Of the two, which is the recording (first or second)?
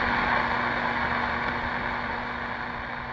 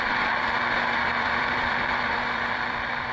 first